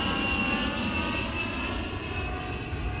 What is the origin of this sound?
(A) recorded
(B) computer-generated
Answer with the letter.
A